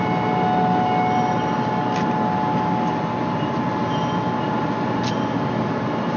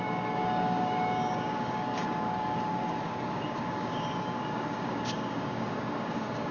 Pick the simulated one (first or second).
second